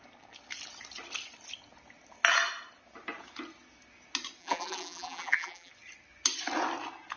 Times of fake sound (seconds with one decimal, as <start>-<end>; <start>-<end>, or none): 4.4-5.7